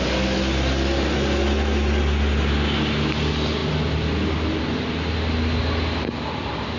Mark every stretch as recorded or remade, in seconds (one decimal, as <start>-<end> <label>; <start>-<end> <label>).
0.0-6.8 recorded